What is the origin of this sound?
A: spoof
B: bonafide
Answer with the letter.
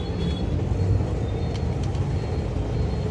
B